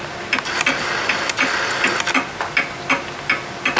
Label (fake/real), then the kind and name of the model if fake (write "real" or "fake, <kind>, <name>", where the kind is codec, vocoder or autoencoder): real